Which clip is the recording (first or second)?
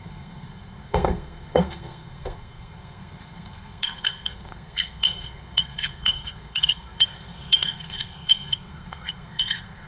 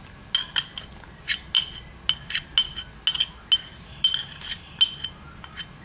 second